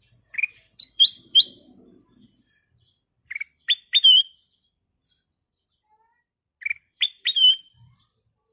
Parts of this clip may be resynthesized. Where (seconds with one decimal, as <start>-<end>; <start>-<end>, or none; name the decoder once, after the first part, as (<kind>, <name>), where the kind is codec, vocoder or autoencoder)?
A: 0.0-5.0 (vocoder, BigVGAN v2); 6.8-8.5